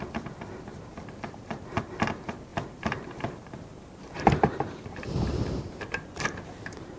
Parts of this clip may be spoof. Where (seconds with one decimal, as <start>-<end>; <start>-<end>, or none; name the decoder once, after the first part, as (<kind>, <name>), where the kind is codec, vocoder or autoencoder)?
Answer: 0.7-1.8 (vocoder, BigVGAN v2); 2.5-7.0